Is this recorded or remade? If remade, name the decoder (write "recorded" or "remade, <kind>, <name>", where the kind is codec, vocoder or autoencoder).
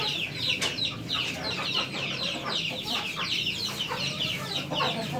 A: remade, vocoder, BigVGAN v2